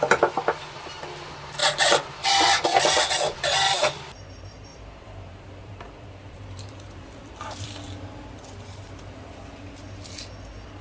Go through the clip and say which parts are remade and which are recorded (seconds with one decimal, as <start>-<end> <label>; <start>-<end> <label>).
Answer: 0.0-1.6 recorded; 1.6-2.3 remade; 2.3-4.7 recorded; 4.7-7.7 remade; 7.7-10.8 recorded